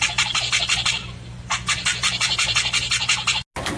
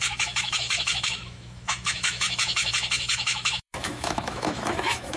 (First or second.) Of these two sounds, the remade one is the second